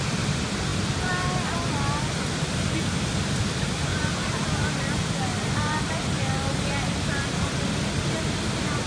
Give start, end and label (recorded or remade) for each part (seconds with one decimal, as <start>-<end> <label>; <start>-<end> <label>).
0.0-8.9 recorded